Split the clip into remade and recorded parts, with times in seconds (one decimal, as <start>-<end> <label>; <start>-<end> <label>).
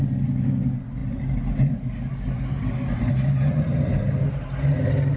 0.0-5.2 recorded